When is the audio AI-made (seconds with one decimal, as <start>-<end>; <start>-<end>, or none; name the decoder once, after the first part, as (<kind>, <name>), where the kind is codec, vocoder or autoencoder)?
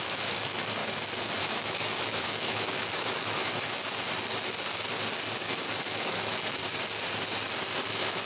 0.0-0.8 (autoencoder, DAC-VAE); 1.4-3.5; 5.7-6.6; 7.9-8.3